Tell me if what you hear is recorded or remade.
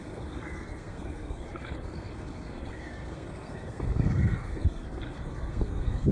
remade